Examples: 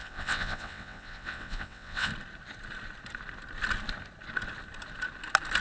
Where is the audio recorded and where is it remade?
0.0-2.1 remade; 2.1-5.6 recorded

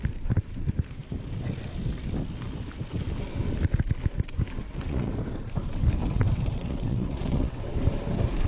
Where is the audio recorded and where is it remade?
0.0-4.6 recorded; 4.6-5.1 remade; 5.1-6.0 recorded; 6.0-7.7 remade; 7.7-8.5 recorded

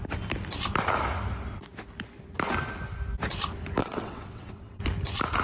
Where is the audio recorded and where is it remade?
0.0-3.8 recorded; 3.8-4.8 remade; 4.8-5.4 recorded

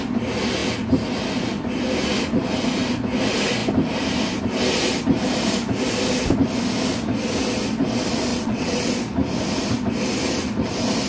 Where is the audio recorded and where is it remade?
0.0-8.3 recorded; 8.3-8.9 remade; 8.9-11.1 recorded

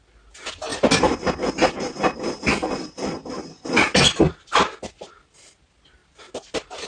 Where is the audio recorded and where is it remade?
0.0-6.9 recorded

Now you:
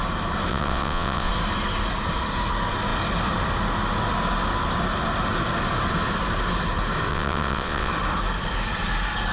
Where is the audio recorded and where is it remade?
0.0-0.5 recorded; 0.5-1.3 remade; 1.3-7.1 recorded; 7.1-7.9 remade; 7.9-9.3 recorded

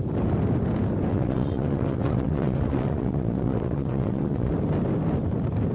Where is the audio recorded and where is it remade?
0.0-1.1 recorded; 1.1-4.5 remade; 4.5-5.7 recorded

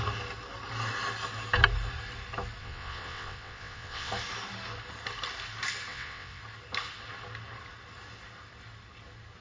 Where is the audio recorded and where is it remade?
0.0-2.6 recorded; 2.6-4.1 remade; 4.1-5.9 recorded; 5.9-6.4 remade; 6.4-9.4 recorded